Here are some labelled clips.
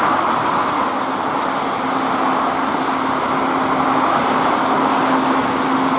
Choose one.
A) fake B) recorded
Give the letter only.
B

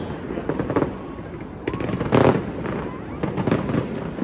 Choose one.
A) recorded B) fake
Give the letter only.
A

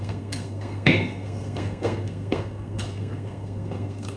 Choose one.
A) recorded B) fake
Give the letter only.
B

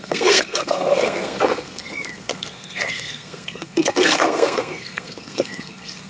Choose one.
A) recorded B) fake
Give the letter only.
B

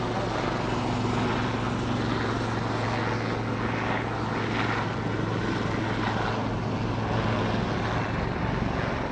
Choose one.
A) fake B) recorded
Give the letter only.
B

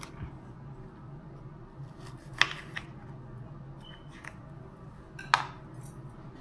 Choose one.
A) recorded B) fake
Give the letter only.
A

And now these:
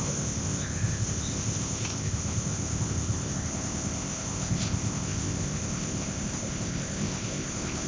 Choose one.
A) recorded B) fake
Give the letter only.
B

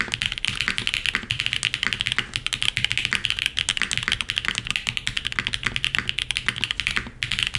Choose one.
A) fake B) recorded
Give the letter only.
B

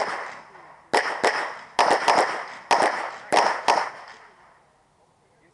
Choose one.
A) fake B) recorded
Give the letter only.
B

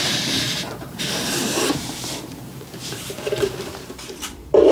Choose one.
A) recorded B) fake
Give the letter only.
B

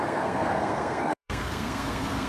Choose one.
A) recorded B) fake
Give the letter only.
B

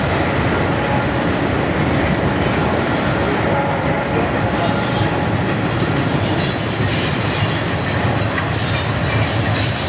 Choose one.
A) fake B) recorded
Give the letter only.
B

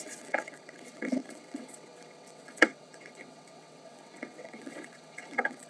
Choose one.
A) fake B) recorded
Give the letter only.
A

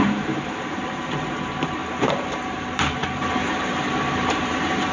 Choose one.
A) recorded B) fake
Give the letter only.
B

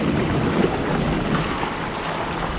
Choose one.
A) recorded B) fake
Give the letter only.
A